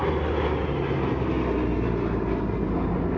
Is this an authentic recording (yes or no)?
yes